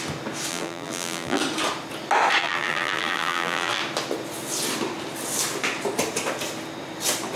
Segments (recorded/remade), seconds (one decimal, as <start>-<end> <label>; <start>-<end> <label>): 0.0-0.5 recorded; 0.5-1.4 remade; 1.4-2.4 recorded; 2.4-3.8 remade; 3.8-7.4 recorded